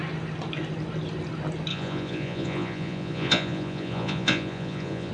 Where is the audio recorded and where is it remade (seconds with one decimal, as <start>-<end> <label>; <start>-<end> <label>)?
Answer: 0.0-1.7 recorded; 1.7-5.1 remade